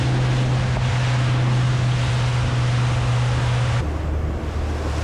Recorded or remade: recorded